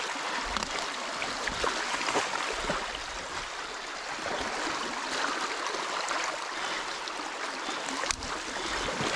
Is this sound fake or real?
real